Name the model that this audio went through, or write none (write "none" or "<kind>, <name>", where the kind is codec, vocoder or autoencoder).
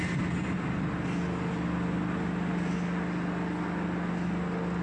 none